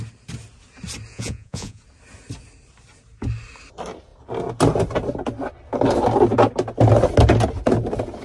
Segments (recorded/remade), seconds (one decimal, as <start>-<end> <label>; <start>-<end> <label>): 0.0-1.1 recorded; 1.1-1.8 remade; 1.8-8.2 recorded